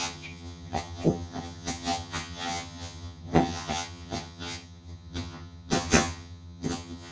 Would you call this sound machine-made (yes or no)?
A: yes